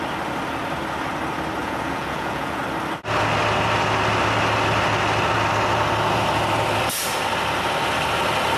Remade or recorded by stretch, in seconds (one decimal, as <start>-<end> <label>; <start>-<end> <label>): 0.0-1.6 recorded; 1.6-2.6 remade; 2.6-8.6 recorded